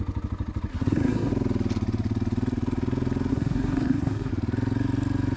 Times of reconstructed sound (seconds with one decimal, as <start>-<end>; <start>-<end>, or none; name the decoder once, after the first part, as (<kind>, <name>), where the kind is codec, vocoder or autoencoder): 0.7-1.3 (codec, SNAC); 3.3-4.3